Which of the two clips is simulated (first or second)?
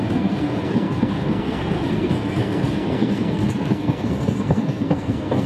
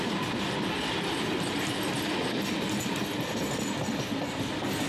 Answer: first